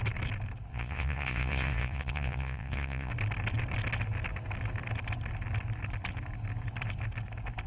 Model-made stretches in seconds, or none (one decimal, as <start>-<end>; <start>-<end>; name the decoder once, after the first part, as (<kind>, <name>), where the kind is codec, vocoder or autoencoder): 0.7-3.1 (vocoder, Vocos)